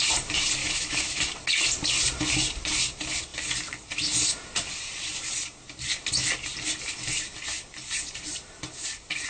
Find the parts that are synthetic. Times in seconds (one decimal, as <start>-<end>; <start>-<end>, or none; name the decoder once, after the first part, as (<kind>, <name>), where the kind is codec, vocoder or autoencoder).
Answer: 0.6-1.2 (autoencoder, DAC-VAE)